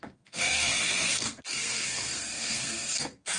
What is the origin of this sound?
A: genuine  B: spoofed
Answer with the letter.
B